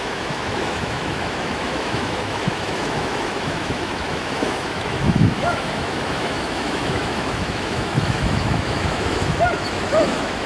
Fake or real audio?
fake